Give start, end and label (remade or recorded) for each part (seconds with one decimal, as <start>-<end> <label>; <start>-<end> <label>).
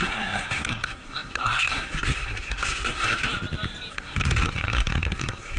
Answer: 0.0-3.3 remade; 3.3-3.9 recorded; 3.9-5.6 remade